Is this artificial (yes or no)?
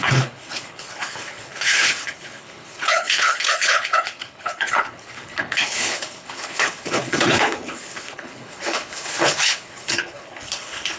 yes